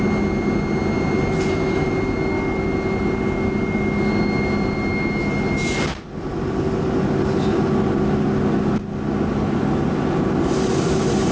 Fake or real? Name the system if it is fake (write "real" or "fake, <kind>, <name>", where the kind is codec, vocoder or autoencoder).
real